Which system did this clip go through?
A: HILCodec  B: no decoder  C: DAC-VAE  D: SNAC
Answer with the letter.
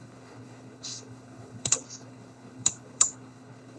A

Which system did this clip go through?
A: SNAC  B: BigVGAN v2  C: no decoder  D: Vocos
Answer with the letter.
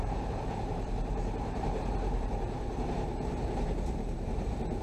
B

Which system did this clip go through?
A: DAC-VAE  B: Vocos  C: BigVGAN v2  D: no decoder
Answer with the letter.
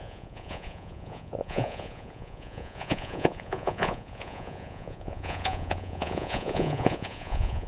B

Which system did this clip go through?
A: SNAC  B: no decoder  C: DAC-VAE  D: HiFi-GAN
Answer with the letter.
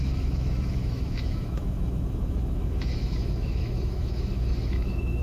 C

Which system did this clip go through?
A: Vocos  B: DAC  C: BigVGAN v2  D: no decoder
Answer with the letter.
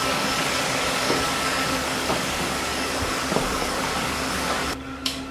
B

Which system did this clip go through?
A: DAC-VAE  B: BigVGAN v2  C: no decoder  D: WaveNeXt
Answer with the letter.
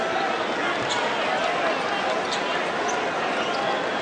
C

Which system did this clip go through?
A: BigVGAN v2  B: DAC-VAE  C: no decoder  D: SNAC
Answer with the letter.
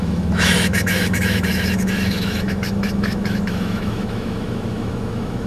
B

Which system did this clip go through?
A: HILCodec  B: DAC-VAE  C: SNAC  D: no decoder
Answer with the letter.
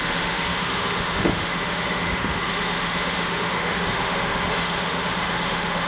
B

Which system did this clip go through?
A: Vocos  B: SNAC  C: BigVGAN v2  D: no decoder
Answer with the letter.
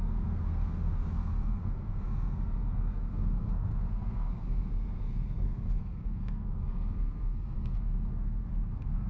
B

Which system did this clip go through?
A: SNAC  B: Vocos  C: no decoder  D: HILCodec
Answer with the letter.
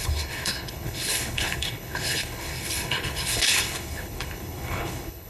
D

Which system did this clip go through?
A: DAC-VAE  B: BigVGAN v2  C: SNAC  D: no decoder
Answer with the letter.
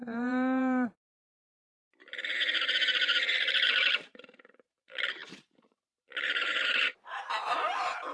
B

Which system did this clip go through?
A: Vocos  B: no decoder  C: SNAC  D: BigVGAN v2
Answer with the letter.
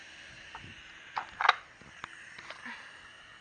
B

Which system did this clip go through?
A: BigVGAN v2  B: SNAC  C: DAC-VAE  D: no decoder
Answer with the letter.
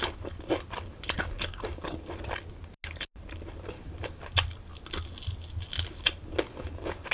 D